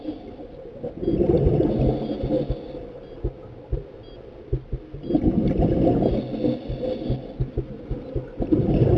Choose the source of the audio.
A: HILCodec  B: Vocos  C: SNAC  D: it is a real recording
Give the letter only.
D